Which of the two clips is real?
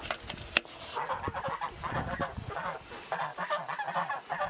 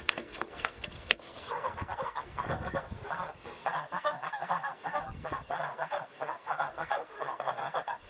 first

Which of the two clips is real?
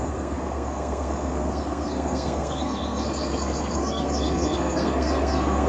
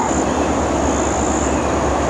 second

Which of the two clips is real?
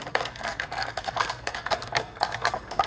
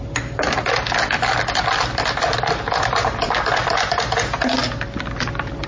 second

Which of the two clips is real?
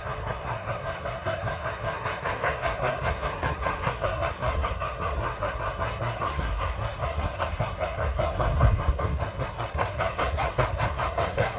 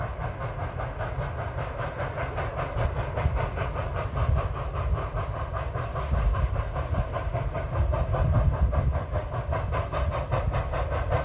second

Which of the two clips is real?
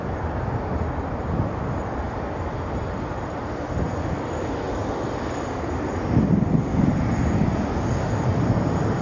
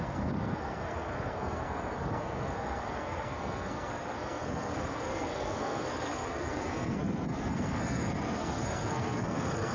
first